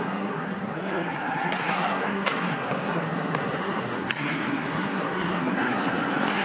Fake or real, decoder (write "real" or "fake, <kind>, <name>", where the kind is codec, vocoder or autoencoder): fake, codec, SNAC